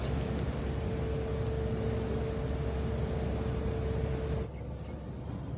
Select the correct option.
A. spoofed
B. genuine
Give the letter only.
B